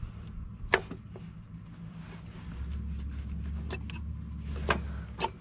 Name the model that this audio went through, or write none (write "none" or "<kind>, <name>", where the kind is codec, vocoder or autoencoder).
none